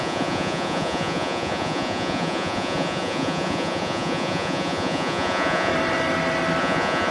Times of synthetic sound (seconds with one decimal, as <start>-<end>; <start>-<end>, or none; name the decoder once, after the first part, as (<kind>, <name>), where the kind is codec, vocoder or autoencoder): 0.0-5.7 (vocoder, Vocos); 6.6-7.1